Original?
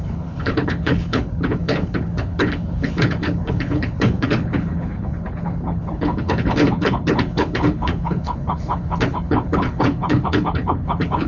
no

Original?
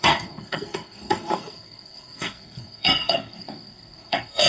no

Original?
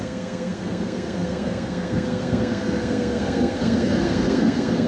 no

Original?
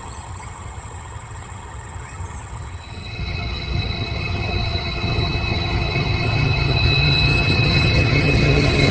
no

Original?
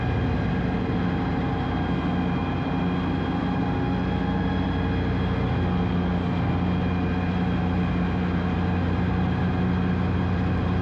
yes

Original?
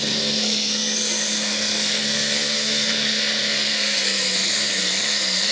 no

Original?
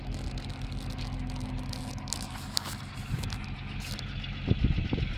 yes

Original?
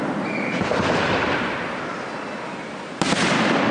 yes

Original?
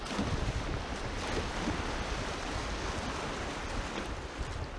yes